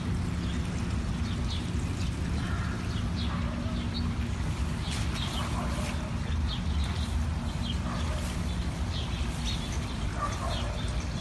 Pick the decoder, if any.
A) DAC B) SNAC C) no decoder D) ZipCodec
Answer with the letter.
C